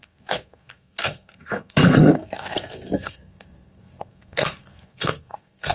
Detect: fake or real fake